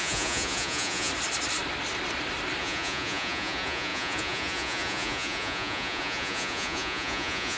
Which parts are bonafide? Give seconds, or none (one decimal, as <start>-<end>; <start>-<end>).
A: 1.1-2.6